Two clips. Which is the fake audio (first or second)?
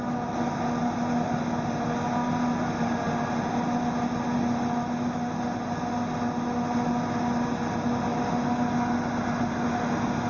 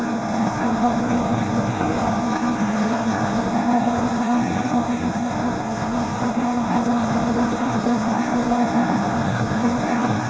second